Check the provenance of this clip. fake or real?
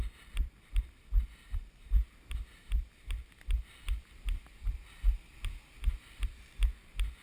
real